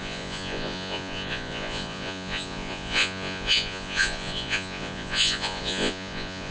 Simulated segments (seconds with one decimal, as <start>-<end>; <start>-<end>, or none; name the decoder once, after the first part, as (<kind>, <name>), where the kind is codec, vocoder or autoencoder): 0.0-6.5 (vocoder, Vocos)